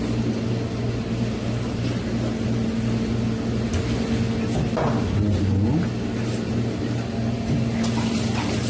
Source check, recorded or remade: recorded